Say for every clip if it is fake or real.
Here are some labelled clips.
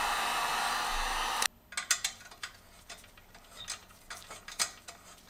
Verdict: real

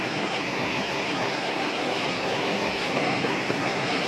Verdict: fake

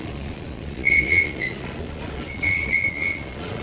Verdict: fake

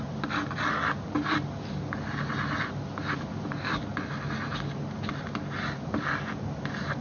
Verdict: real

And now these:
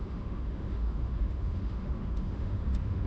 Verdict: fake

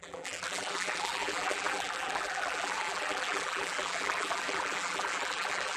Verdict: fake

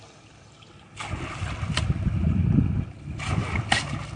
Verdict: real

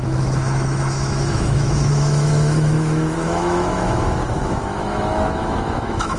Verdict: fake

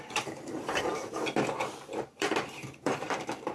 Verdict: fake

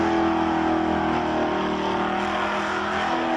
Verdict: real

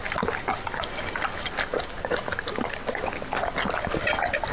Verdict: real